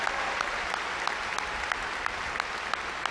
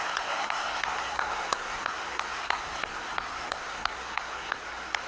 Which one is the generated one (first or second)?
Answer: second